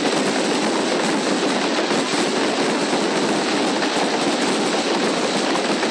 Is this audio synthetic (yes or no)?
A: no